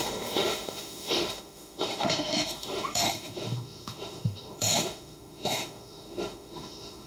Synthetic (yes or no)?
yes